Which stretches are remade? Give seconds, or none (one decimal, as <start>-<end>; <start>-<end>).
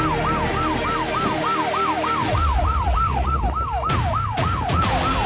2.2-3.4; 4.1-4.8